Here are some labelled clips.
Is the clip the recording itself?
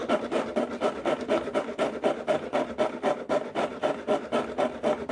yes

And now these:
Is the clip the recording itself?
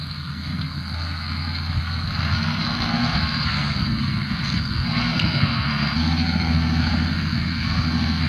no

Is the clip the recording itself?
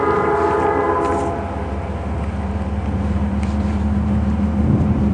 yes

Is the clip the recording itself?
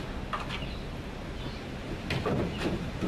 yes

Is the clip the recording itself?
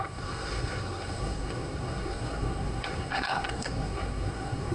no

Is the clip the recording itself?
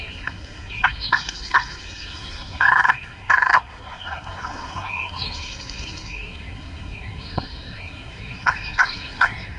no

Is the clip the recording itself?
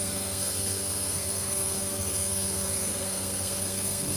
no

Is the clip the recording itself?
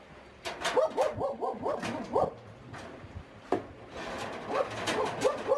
yes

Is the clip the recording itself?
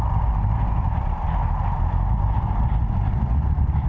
yes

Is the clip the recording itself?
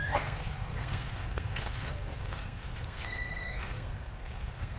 no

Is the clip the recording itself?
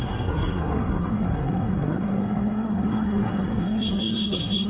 no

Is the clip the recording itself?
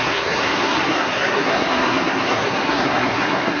no